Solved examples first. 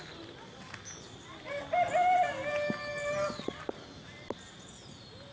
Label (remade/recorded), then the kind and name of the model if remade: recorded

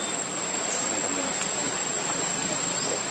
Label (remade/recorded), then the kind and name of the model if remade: recorded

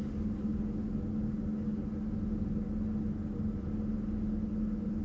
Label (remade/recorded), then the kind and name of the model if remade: recorded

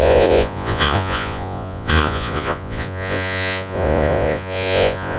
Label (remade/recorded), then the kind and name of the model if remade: remade, vocoder, Vocos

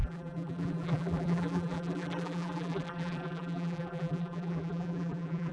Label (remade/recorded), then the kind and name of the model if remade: remade, vocoder, BigVGAN v2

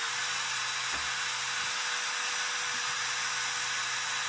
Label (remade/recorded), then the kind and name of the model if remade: recorded